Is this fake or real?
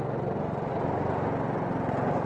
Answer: real